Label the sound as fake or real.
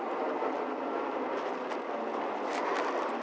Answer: fake